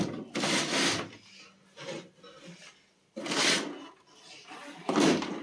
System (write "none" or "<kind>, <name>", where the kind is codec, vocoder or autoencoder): none